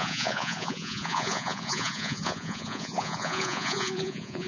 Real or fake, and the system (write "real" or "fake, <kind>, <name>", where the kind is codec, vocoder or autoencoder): fake, vocoder, Vocos